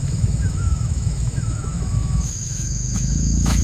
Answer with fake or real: fake